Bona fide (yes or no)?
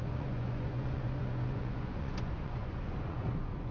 no